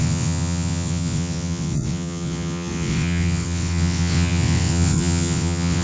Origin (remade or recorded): remade